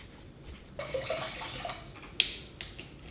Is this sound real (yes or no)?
yes